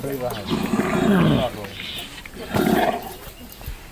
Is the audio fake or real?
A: real